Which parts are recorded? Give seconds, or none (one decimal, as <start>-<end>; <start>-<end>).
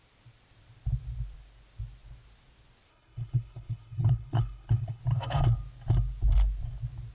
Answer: 0.0-2.9; 5.0-7.1